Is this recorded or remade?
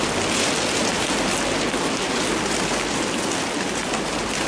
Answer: recorded